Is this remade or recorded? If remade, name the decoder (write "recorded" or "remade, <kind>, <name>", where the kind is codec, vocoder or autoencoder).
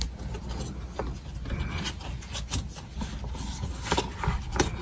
recorded